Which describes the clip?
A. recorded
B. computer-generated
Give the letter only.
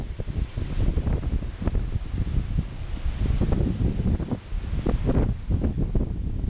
A